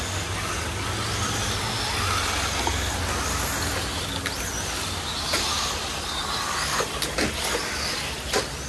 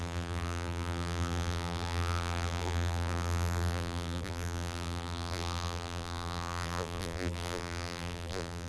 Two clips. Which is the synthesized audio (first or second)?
second